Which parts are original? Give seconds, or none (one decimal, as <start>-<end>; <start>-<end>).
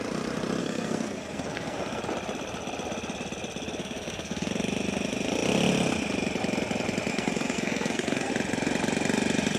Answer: 0.0-0.6; 2.0-3.8; 4.5-7.1; 8.3-9.6